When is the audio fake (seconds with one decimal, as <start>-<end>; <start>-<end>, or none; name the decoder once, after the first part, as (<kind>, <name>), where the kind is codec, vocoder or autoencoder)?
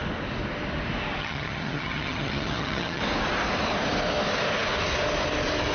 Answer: 1.2-3.0 (vocoder, HiFi-GAN)